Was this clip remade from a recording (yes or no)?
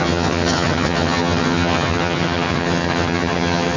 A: yes